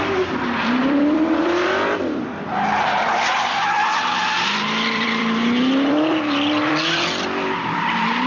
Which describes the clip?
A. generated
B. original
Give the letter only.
A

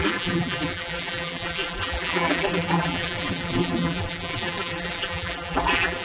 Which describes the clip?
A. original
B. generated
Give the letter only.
B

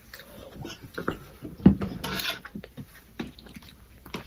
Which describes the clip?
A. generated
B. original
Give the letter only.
A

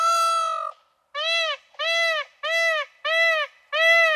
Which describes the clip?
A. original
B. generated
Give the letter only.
A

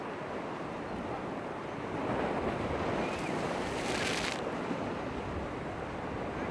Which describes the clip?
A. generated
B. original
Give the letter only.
B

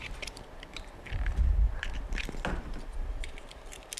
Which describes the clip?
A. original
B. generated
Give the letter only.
A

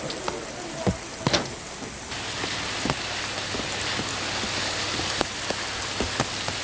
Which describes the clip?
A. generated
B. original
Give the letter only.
B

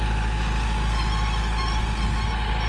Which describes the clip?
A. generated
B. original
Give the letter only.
B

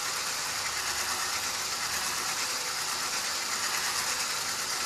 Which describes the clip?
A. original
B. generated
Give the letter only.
A